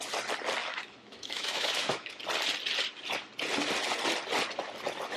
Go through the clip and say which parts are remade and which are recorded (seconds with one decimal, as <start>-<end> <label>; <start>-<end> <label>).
0.0-0.6 recorded; 0.6-2.2 remade; 2.2-5.2 recorded